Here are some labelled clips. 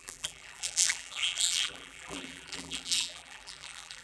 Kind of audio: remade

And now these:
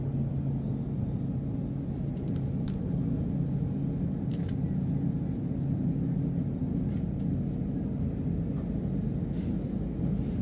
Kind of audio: recorded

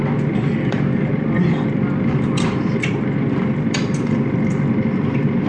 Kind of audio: remade